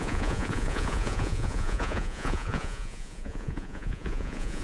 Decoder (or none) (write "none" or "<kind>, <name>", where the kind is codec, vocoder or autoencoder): vocoder, Vocos